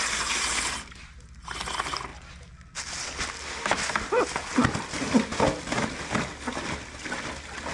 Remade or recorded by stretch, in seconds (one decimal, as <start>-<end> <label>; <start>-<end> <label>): 0.0-7.7 recorded